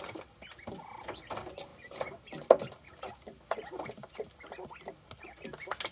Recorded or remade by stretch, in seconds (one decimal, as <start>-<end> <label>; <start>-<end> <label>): 0.0-5.9 recorded

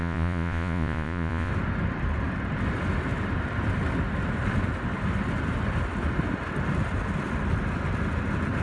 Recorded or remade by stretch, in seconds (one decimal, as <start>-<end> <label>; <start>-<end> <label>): 0.0-1.5 remade; 1.5-8.6 recorded

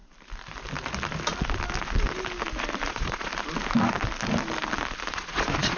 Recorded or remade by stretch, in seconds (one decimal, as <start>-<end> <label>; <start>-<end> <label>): 0.0-2.9 recorded; 2.9-3.3 remade; 3.3-5.1 recorded; 5.1-5.8 remade

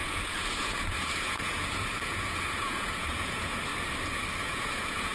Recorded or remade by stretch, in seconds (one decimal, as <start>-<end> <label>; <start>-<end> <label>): 0.0-3.7 remade; 3.7-4.4 recorded; 4.4-5.1 remade

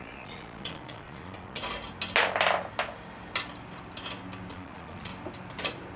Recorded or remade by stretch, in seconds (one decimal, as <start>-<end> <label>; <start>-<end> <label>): 0.0-1.6 remade; 1.6-4.5 recorded; 4.5-5.1 remade; 5.1-6.0 recorded